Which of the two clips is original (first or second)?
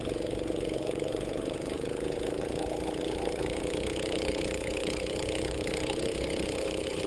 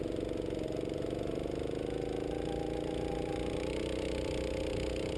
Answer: second